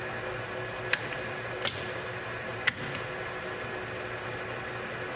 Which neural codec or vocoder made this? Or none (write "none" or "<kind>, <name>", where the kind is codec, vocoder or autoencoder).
none